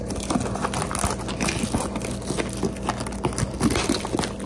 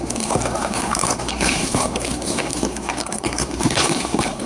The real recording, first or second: first